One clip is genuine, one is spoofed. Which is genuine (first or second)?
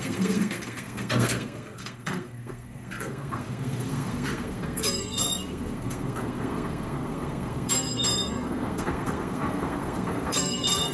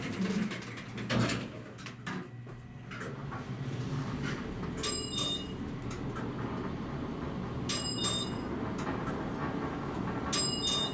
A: second